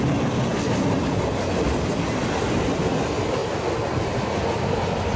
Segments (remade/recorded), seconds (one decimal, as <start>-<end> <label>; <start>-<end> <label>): 0.0-5.2 recorded